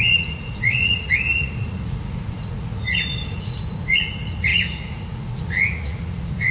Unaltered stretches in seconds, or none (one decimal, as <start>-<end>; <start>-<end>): none